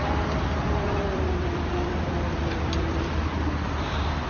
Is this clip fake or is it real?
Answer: fake